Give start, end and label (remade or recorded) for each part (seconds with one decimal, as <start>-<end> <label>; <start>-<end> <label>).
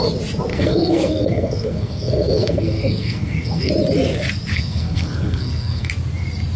0.0-0.5 recorded; 0.5-3.7 remade; 3.7-4.5 recorded; 4.5-5.9 remade; 5.9-6.6 recorded